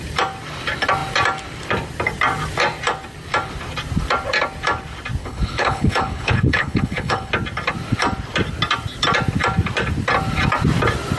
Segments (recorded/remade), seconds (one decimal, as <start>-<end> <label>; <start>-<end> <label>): 0.0-5.2 recorded; 5.2-7.3 remade; 7.3-11.2 recorded